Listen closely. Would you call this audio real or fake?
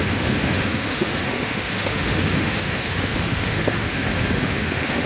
fake